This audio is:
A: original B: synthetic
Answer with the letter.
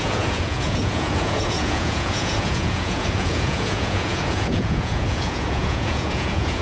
B